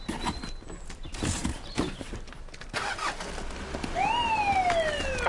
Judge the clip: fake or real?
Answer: real